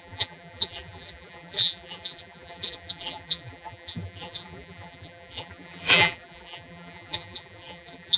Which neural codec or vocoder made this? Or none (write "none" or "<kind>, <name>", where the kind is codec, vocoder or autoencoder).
vocoder, BigVGAN v2